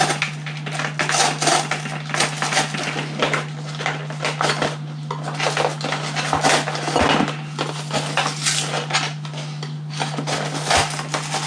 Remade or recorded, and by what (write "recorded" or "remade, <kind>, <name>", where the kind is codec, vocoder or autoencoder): recorded